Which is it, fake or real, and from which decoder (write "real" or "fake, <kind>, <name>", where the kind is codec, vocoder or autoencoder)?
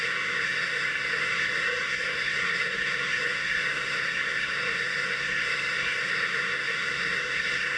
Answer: fake, codec, SNAC